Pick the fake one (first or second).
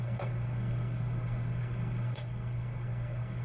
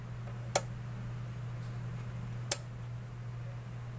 first